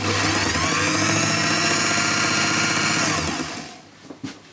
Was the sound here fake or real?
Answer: real